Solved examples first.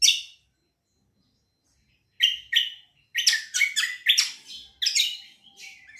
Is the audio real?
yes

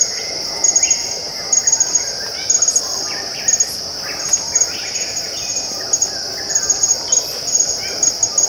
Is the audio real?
yes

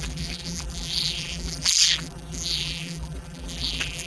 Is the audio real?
no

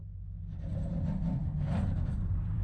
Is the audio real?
no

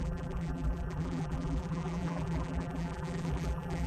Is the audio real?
no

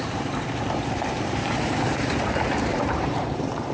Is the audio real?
no